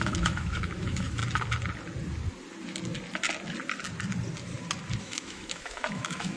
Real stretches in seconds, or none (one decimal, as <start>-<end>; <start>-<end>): 1.2-5.0